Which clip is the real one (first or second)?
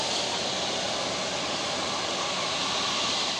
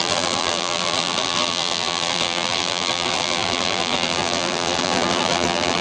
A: first